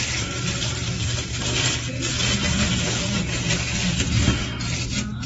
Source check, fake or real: real